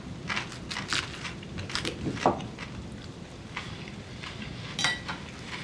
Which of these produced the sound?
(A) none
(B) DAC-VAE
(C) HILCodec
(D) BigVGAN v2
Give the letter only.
A